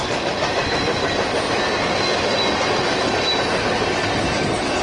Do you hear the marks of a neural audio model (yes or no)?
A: no